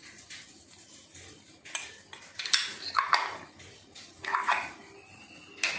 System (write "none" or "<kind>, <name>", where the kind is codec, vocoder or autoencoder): none